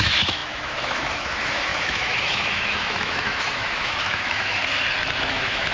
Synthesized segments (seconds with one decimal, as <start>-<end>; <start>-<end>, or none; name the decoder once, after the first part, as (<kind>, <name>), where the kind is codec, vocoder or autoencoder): 0.0-4.6 (autoencoder, DAC-VAE); 5.3-5.7